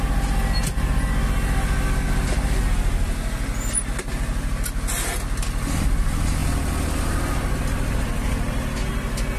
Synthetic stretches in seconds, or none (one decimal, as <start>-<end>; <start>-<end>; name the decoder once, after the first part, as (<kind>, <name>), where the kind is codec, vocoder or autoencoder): none